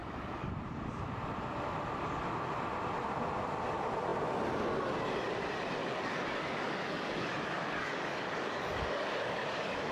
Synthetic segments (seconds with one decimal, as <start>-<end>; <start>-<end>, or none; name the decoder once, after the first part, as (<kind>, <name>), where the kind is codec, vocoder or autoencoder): 0.0-0.5 (codec, DAC); 5.8-9.9

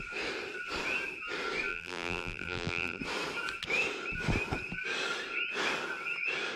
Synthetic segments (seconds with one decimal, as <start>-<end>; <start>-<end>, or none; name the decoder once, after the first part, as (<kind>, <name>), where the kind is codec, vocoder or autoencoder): 1.7-3.0 (vocoder, BigVGAN v2)

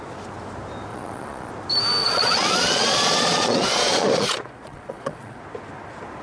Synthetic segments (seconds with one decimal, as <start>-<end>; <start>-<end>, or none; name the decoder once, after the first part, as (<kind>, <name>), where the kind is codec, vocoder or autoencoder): 0.9-1.5 (vocoder, Vocos); 2.0-5.4

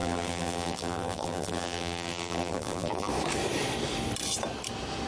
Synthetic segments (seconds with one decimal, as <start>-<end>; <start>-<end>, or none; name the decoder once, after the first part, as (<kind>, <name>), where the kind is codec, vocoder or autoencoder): 0.0-3.1 (vocoder, BigVGAN v2)

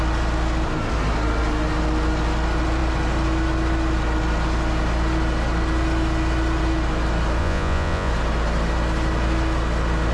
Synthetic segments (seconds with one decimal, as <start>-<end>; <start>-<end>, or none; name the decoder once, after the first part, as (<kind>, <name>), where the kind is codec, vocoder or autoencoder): 7.4-8.1 (vocoder, Vocos)

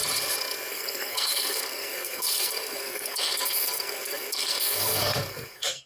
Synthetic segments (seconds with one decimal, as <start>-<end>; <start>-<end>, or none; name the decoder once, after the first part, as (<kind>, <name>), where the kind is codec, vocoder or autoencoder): 0.7-5.9 (codec, SNAC)